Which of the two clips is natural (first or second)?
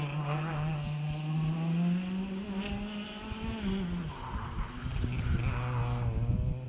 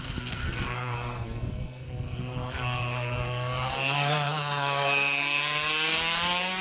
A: first